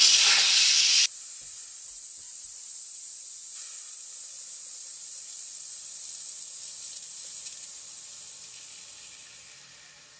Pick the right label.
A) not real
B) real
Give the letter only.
B